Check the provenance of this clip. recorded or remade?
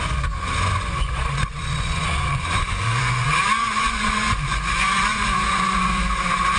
remade